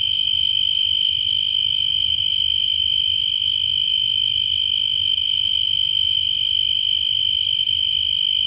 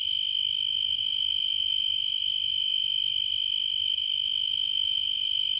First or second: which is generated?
first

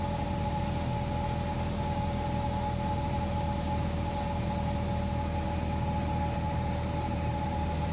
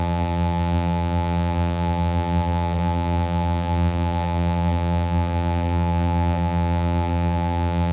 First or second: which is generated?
second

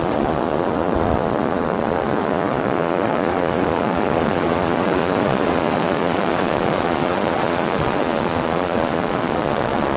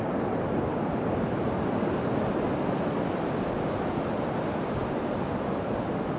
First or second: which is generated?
first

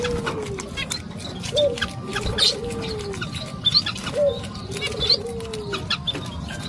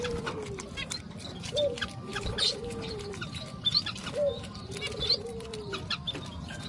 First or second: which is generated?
second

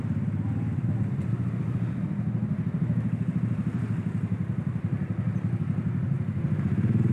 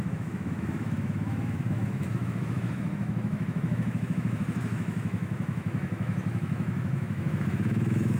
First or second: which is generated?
second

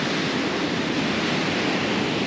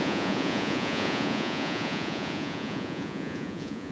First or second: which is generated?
second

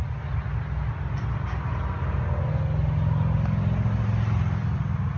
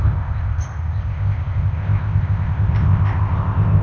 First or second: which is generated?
second